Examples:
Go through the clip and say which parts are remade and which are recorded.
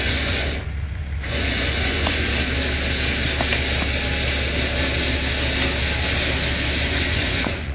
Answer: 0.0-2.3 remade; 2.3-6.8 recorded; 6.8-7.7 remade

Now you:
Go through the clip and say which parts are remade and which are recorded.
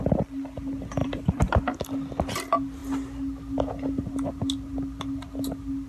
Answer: 0.0-1.0 recorded; 1.0-1.5 remade; 1.5-5.9 recorded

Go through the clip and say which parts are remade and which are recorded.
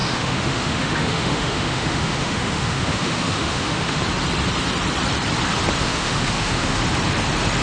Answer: 0.0-4.0 remade; 4.0-5.8 recorded; 5.8-6.8 remade; 6.8-7.6 recorded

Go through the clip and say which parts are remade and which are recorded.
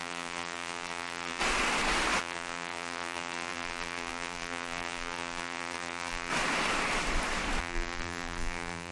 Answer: 0.0-1.4 remade; 1.4-2.2 recorded; 2.2-6.3 remade; 6.3-7.6 recorded; 7.6-8.9 remade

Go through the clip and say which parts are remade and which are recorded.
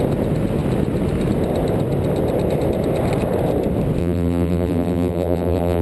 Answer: 0.0-4.0 recorded; 4.0-5.8 remade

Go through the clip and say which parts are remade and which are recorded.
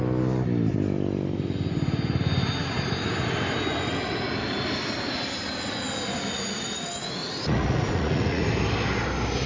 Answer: 0.0-7.2 recorded; 7.2-8.4 remade; 8.4-9.5 recorded